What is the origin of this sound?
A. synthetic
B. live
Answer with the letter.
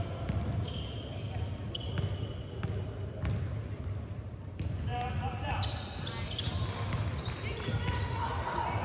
B